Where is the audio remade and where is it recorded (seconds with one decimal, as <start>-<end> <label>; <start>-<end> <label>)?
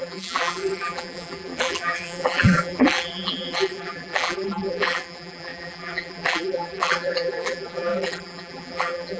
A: 0.0-9.2 remade